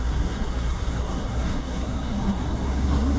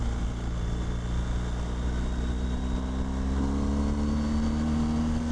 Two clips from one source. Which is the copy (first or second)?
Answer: first